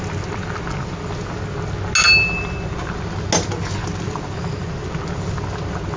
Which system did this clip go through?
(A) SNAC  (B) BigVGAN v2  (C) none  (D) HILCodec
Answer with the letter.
C